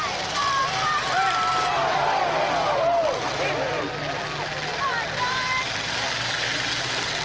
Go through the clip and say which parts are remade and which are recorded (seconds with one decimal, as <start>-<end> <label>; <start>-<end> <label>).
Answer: 0.0-0.4 recorded; 0.4-3.8 remade; 3.8-4.7 recorded; 4.7-6.7 remade; 6.7-7.2 recorded